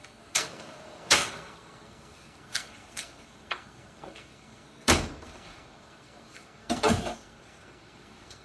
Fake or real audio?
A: fake